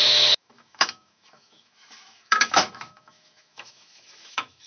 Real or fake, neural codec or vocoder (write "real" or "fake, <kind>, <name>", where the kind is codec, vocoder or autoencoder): fake, autoencoder, DAC-VAE